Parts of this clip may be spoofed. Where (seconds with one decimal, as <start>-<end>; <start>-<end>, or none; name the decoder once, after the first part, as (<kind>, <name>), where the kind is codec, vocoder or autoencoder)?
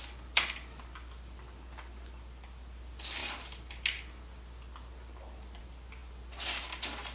none